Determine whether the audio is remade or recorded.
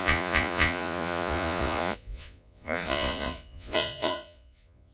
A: remade